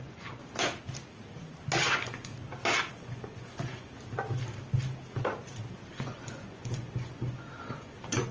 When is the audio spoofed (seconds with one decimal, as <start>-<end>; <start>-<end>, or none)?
0.0-0.4; 1.9-2.3; 2.9-3.9; 5.9-8.3